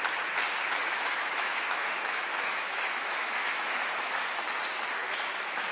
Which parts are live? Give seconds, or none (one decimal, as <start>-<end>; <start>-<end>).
0.0-0.8; 4.2-5.0